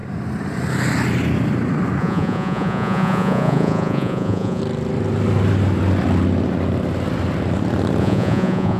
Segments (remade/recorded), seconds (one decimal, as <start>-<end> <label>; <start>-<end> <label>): 0.0-2.0 recorded; 2.0-4.6 remade; 4.6-8.0 recorded; 8.0-8.8 remade